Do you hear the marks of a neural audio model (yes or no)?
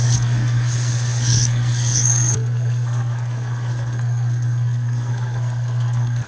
yes